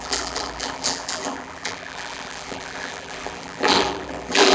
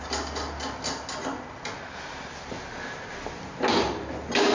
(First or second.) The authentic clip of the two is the second